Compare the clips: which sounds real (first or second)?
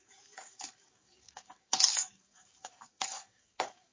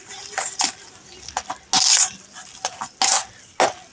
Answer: second